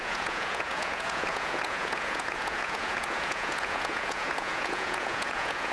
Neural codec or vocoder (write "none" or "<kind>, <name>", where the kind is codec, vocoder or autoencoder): vocoder, Vocos